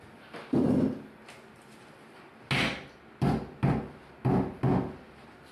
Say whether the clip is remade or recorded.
recorded